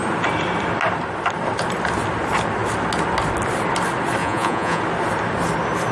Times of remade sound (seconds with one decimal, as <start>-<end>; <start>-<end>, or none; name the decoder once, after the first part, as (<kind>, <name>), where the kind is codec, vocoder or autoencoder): 4.2-4.8 (vocoder, Vocos)